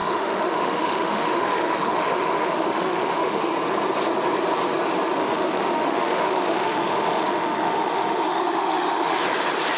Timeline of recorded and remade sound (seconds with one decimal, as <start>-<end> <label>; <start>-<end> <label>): 0.0-3.5 remade; 3.5-5.2 recorded; 5.2-9.2 remade; 9.2-9.8 recorded